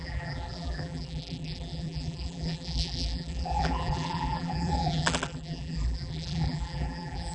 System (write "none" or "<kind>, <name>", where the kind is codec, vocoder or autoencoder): vocoder, BigVGAN v2